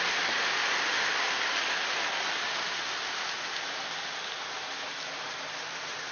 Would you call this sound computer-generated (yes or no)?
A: no